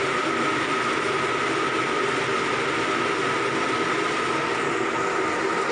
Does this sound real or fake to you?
real